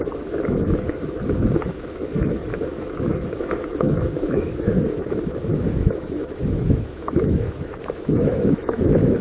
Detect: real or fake fake